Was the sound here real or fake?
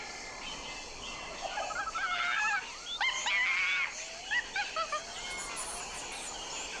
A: real